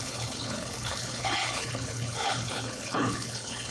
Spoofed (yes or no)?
yes